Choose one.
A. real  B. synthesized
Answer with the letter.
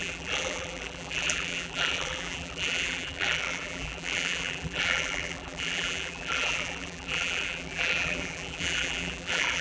B